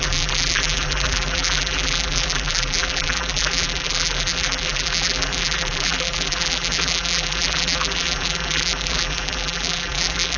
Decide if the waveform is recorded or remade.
remade